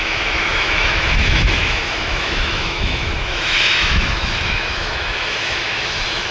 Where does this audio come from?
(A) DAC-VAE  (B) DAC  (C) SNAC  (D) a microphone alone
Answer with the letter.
A